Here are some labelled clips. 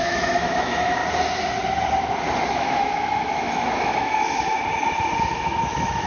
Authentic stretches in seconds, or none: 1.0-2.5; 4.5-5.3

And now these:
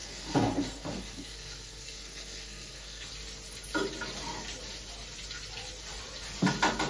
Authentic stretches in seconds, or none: 3.1-6.9

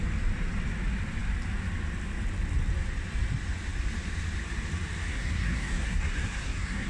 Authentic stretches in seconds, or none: 0.0-5.1